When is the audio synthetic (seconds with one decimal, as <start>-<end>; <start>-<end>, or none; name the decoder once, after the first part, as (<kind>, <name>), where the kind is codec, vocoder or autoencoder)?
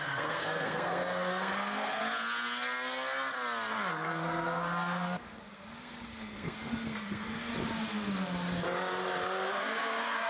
0.0-2.0 (codec, SNAC); 3.9-7.5; 9.5-10.3